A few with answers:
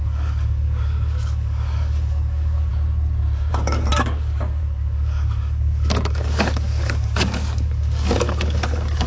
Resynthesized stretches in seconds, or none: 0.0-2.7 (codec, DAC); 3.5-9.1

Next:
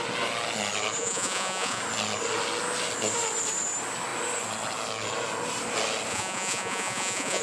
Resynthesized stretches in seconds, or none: 1.0-1.8 (vocoder, Vocos); 6.1-7.4

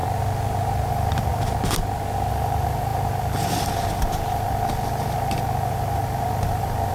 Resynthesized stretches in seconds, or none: 0.9-1.3 (vocoder, BigVGAN v2); 2.3-6.9

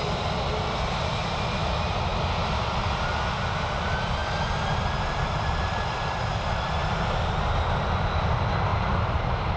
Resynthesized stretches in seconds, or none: 8.7-9.6 (vocoder, BigVGAN v2)

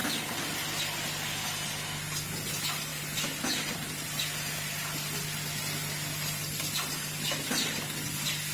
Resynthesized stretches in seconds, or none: none

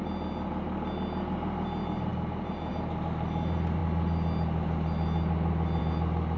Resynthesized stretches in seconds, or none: none

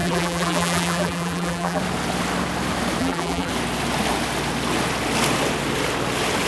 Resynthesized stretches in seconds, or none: 0.0-1.8 (vocoder, BigVGAN v2); 3.0-3.5